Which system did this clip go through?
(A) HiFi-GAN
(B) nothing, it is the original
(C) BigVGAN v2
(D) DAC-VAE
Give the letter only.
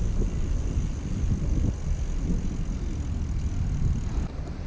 B